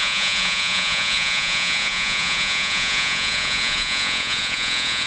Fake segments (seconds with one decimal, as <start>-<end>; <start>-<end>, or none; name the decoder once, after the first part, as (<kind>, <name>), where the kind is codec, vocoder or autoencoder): 0.0-5.1 (vocoder, Vocos)